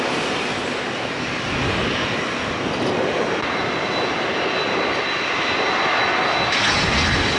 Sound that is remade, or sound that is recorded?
recorded